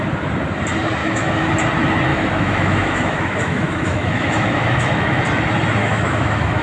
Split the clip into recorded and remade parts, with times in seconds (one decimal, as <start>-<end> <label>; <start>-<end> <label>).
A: 0.0-1.0 recorded; 1.0-1.5 remade; 1.5-2.1 recorded; 2.1-5.2 remade; 5.2-5.8 recorded; 5.8-6.6 remade